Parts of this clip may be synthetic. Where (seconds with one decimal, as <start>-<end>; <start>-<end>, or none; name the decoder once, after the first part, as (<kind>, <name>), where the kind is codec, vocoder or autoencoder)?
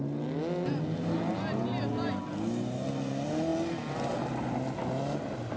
none